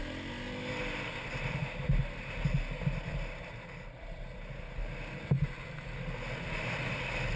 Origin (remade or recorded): recorded